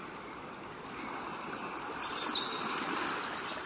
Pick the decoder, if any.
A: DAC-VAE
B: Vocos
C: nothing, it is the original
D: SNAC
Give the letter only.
C